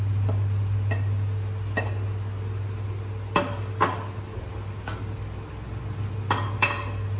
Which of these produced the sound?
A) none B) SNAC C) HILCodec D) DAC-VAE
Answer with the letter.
A